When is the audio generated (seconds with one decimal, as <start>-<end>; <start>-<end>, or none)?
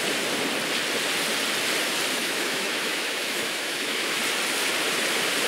2.2-4.2